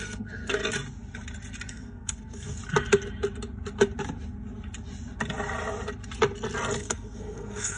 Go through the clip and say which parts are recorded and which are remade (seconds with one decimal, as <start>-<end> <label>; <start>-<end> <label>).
0.0-0.6 remade; 0.6-1.7 recorded; 1.7-2.6 remade; 2.6-6.8 recorded; 6.8-7.8 remade